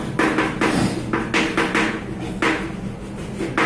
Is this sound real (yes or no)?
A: yes